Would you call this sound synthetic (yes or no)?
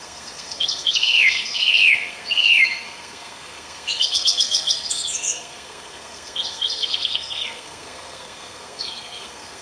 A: yes